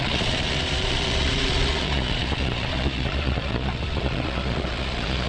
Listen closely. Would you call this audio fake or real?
fake